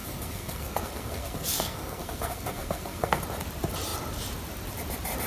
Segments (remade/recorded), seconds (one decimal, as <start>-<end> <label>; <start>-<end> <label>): 0.0-3.2 remade; 3.2-5.3 recorded